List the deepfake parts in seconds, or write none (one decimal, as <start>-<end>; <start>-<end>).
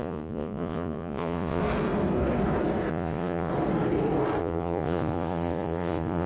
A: 0.0-1.6; 2.9-3.5; 4.4-6.3